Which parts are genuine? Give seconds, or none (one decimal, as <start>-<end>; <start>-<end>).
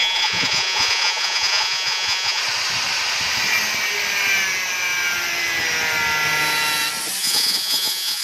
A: 2.4-7.2